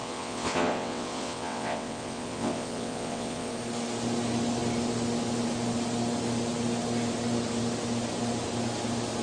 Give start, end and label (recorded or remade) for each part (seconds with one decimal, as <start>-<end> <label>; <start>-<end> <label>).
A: 0.0-3.5 remade; 3.5-9.2 recorded